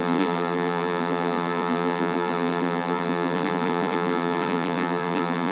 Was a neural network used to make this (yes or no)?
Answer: yes